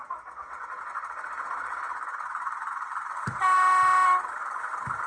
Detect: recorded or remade recorded